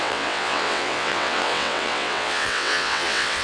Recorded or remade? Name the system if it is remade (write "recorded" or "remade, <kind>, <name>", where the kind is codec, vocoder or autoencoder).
remade, vocoder, WaveNeXt